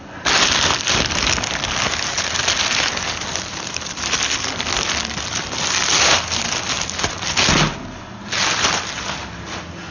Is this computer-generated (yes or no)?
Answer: no